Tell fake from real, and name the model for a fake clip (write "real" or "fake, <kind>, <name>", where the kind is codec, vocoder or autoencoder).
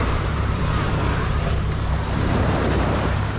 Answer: fake, vocoder, BigVGAN v2